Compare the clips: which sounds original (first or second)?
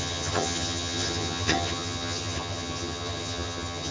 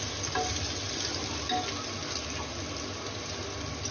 second